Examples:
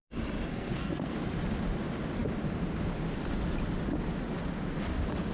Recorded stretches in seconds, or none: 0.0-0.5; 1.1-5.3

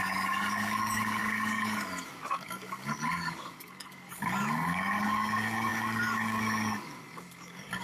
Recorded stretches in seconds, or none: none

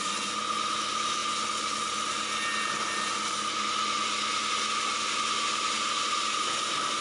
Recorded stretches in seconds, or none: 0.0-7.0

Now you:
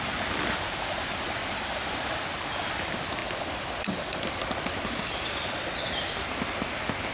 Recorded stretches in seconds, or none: 0.0-1.4; 1.9-3.2; 4.3-7.1

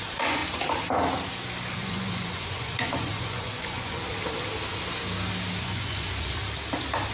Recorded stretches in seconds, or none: 0.4-1.7; 4.0-5.6; 6.4-7.1